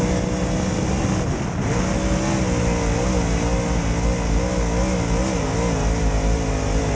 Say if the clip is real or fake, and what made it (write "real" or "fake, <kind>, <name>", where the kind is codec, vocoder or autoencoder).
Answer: real